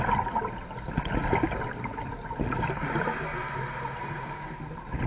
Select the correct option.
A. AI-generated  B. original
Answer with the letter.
B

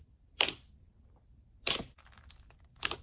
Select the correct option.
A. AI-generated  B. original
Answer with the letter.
B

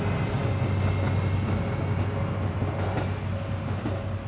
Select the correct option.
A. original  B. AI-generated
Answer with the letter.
A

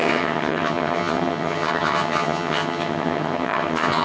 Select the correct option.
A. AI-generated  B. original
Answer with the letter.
A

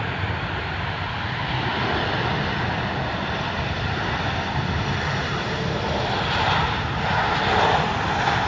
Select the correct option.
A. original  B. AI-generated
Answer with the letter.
A